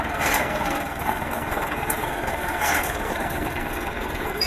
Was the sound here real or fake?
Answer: fake